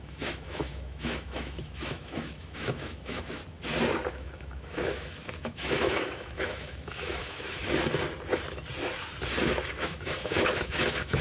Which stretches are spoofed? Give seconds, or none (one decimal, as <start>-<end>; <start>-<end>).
0.0-3.4; 4.1-7.6; 9.4-11.2